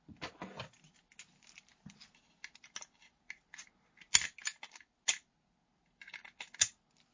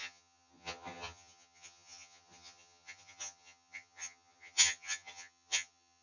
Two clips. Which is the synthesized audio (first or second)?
second